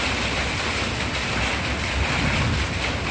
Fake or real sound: real